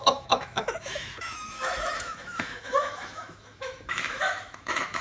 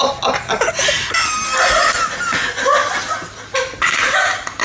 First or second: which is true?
second